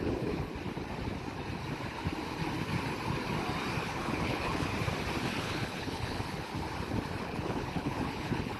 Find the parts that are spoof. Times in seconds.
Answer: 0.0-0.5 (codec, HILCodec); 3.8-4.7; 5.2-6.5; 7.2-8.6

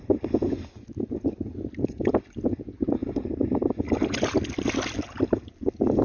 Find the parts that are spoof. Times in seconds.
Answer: none